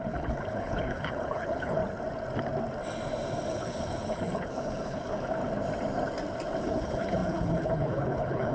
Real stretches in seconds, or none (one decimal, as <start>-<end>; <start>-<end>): 1.8-3.5; 5.4-6.6